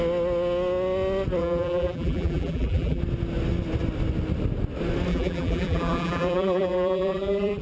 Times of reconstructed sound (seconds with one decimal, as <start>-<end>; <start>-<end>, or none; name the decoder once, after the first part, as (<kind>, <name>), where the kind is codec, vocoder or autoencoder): 1.4-3.0 (vocoder, BigVGAN v2); 5.1-7.6